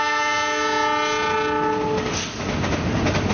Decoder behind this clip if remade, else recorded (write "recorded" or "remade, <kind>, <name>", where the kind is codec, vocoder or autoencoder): recorded